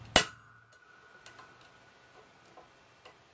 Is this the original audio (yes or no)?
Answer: yes